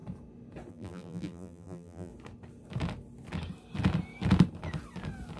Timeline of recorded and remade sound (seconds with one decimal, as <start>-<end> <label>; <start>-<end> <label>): 0.0-0.7 recorded; 0.7-2.1 remade; 2.1-5.4 recorded

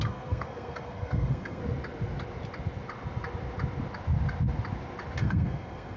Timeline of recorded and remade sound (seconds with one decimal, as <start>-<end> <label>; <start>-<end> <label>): 0.0-1.6 remade; 1.6-5.2 recorded; 5.2-6.0 remade